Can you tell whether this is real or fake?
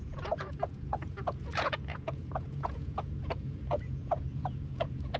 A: fake